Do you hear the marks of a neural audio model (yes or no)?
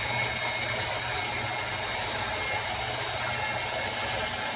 no